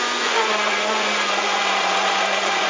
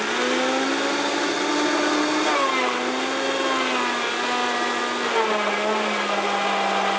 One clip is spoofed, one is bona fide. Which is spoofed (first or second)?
first